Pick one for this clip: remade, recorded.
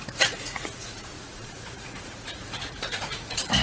remade